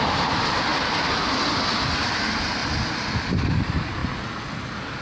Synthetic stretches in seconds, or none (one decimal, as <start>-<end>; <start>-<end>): 0.0-4.0